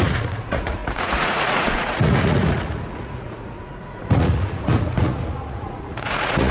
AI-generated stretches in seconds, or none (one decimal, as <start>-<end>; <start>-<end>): 0.0-6.5